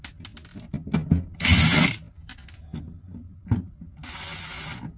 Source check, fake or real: real